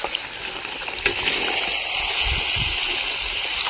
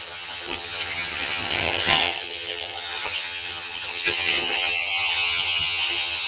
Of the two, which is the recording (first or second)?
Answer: first